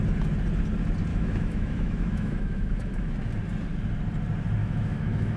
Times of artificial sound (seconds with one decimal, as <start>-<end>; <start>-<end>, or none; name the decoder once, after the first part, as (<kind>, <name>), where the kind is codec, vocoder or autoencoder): 1.1-3.1 (autoencoder, DAC-VAE); 4.6-5.4

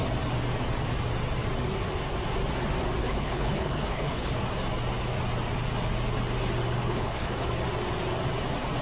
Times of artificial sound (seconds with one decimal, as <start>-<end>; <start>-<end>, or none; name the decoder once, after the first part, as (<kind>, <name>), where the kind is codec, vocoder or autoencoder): 3.0-4.4 (codec, HILCodec); 6.8-7.5

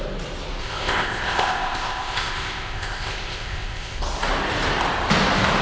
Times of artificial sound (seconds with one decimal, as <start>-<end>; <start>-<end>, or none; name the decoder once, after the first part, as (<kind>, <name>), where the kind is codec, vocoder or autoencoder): 0.6-4.0 (codec, ZipCodec)

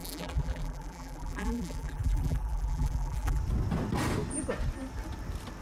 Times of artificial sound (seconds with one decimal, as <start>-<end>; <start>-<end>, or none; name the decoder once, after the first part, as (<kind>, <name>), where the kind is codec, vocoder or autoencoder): 0.0-3.4 (vocoder, BigVGAN v2)